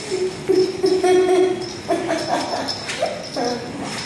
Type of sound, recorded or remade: recorded